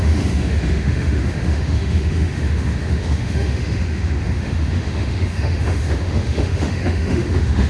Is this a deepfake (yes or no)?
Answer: yes